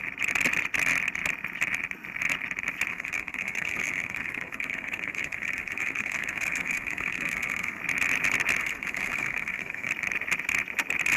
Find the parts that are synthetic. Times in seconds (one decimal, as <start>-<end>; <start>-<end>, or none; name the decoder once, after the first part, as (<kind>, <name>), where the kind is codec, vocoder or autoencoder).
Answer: 2.9-7.8 (codec, SNAC); 8.6-9.9